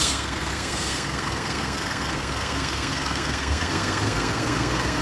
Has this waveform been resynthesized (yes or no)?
yes